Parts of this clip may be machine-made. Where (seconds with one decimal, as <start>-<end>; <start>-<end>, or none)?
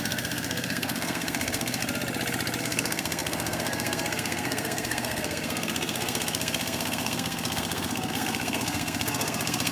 0.0-1.8; 2.6-9.7